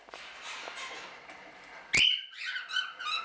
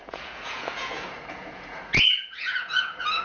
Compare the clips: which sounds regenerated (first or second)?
second